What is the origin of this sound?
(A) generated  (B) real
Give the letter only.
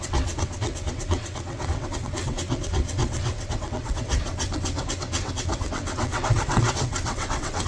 A